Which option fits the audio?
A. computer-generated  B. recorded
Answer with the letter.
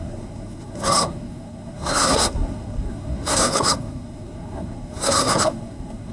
A